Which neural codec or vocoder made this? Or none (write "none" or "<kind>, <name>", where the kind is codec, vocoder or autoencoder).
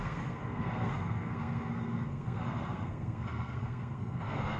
codec, SNAC